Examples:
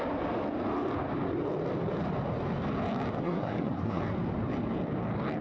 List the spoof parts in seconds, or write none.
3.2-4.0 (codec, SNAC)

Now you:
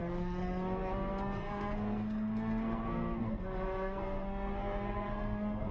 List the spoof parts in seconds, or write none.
0.0-5.7 (codec, SNAC)

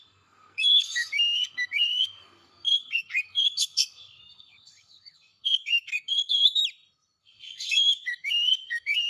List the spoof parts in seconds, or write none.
0.0-6.6 (codec, SNAC); 7.2-9.1

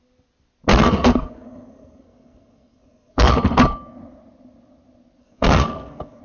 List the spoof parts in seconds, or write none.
0.7-3.3 (codec, SNAC); 5.2-6.2

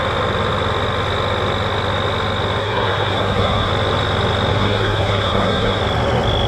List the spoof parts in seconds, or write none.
2.6-3.7 (codec, SNAC); 4.5-5.8

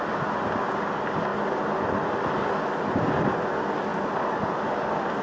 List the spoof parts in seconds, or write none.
none

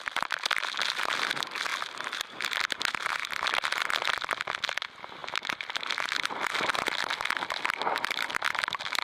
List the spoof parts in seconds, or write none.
none

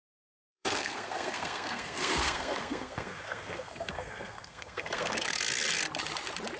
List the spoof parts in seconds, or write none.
0.0-5.3 (codec, SNAC)